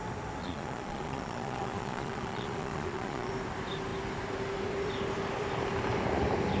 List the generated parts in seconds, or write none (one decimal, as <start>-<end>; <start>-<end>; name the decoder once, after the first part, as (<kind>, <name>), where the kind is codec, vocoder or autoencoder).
0.4-3.3 (vocoder, Vocos)